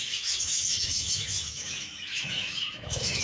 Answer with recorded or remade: remade